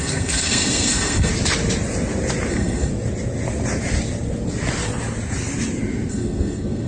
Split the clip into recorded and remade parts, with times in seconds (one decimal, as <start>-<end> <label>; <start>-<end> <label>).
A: 0.0-1.3 remade; 1.3-2.5 recorded; 2.5-2.9 remade; 2.9-6.1 recorded; 6.1-6.9 remade